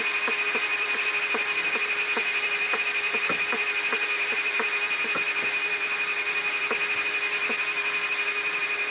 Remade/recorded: recorded